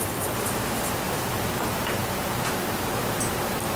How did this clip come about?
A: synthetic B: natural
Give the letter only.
B